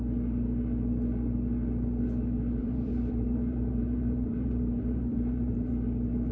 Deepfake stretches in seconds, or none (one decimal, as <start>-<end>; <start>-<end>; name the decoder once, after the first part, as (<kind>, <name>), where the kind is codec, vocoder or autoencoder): 2.6-5.7 (vocoder, BigVGAN v2)